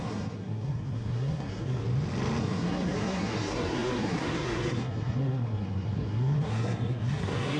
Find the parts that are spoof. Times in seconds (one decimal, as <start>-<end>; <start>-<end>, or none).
0.0-1.8; 2.4-7.6